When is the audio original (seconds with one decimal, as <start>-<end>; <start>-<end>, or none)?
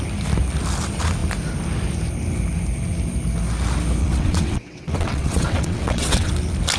0.0-4.0; 6.3-6.8